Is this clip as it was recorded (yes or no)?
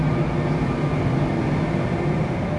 yes